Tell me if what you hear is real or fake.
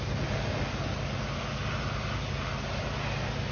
real